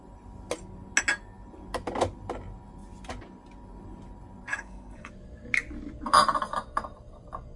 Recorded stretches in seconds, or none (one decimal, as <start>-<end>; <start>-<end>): 0.0-4.5; 5.1-7.6